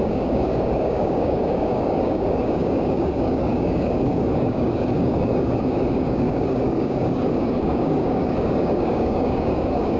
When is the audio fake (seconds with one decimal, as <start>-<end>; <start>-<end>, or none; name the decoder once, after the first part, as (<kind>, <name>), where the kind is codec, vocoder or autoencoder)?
0.0-10.0 (codec, DAC)